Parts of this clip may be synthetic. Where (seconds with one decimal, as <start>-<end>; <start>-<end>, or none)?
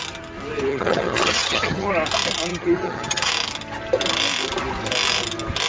0.7-1.9; 2.5-3.3